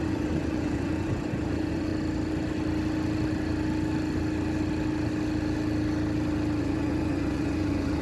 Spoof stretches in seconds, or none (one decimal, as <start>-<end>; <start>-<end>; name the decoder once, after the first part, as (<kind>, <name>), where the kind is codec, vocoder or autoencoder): 0.0-1.9 (vocoder, Vocos); 6.6-8.0